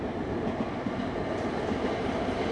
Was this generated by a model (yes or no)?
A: no